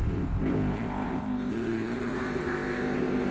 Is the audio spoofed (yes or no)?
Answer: yes